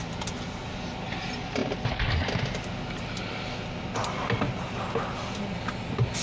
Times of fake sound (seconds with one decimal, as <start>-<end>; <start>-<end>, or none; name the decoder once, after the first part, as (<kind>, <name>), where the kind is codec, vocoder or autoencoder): none